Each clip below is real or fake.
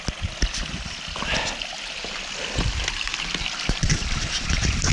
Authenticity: real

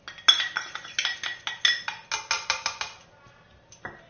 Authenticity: real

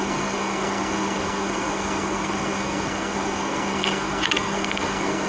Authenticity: fake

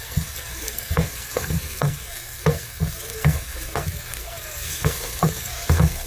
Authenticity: fake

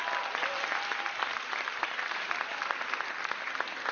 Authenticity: real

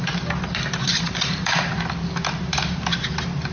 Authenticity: fake